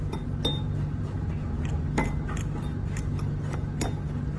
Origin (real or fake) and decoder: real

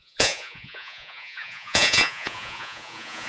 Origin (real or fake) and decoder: fake, vocoder, Vocos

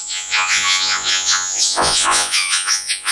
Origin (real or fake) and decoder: fake, vocoder, Vocos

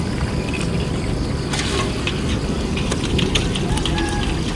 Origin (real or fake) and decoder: real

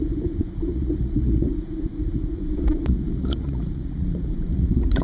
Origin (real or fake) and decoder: fake, vocoder, Vocos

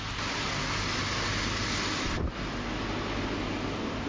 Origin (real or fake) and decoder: real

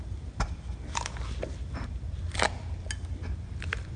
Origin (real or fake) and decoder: real